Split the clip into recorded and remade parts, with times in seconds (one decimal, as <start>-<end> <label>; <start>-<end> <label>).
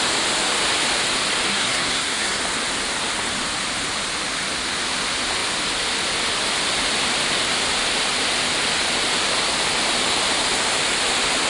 0.0-1.5 recorded; 1.5-2.4 remade; 2.4-11.5 recorded